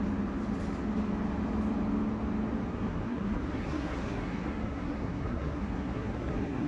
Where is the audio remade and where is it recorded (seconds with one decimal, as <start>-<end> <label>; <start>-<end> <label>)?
0.0-2.7 recorded; 2.7-6.7 remade